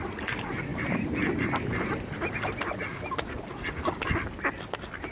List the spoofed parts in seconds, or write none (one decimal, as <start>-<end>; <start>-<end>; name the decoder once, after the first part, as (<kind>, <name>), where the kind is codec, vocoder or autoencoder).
0.7-3.8 (vocoder, BigVGAN v2)